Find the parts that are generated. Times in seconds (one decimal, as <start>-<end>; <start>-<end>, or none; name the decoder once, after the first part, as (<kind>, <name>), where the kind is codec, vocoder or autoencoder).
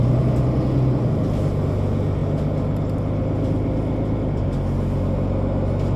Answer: none